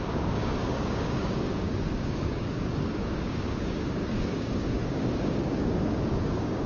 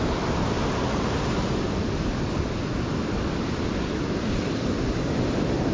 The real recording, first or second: second